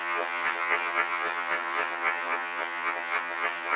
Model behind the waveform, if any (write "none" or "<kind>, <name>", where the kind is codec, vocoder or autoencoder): vocoder, HiFi-GAN